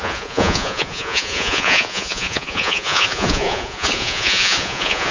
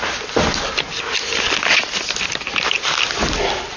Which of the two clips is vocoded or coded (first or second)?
first